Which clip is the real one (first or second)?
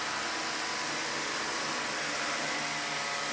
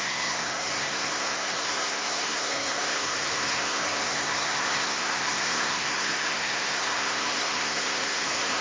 first